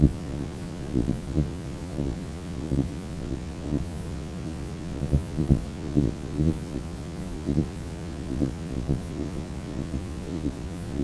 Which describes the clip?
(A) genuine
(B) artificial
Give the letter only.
B